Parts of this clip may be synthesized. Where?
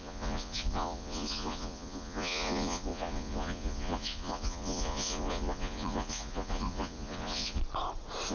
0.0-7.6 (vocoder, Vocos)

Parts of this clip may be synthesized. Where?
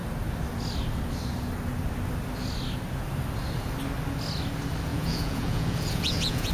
4.9-6.5 (vocoder, Vocos)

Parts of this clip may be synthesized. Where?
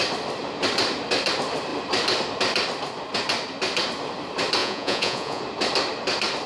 4.6-5.4 (vocoder, Vocos)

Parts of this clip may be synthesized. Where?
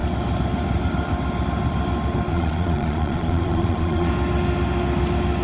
2.3-4.1 (vocoder, Vocos)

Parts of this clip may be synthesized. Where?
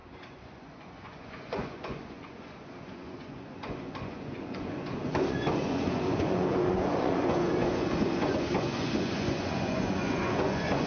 0.0-10.9 (vocoder, Vocos)